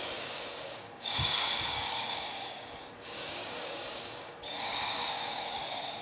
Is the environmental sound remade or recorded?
remade